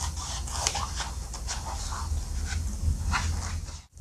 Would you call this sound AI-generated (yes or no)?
no